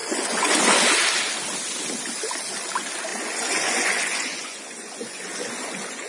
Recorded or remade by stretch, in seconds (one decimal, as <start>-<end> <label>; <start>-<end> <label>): 0.0-0.8 remade; 0.8-3.1 recorded; 3.1-6.1 remade